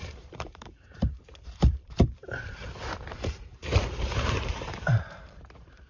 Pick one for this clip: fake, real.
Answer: fake